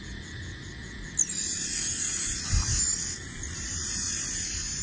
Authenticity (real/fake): real